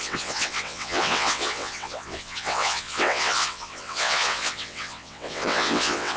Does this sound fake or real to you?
fake